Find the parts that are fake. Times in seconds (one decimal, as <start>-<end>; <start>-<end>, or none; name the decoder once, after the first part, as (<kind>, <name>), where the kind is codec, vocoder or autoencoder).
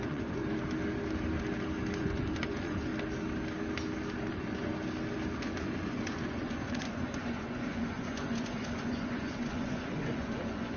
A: 0.0-0.4 (vocoder, Vocos); 2.0-2.9; 4.3-4.7; 5.4-10.8